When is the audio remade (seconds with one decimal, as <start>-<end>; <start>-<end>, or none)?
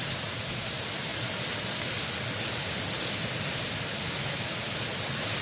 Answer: none